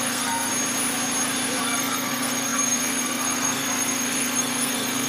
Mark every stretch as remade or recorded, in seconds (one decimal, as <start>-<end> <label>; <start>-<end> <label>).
0.0-0.5 remade; 0.5-1.6 recorded; 1.6-5.1 remade